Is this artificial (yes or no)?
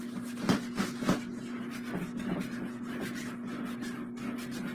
no